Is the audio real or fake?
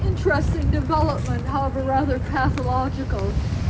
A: real